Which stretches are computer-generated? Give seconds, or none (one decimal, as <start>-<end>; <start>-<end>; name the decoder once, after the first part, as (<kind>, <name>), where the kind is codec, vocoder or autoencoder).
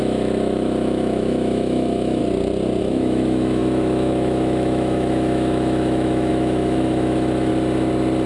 0.0-2.2 (autoencoder, DAC-VAE); 2.8-7.5